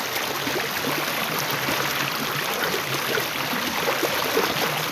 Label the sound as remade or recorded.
recorded